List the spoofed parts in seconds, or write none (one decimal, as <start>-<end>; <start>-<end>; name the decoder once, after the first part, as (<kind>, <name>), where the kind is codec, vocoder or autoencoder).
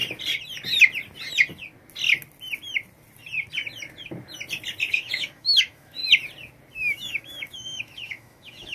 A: 4.9-6.0 (autoencoder, DAC-VAE); 6.7-8.7